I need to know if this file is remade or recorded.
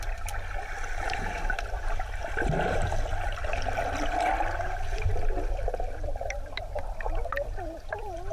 recorded